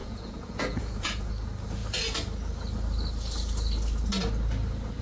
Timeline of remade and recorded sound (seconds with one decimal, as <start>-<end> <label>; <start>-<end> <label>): 0.0-1.3 remade; 1.3-5.0 recorded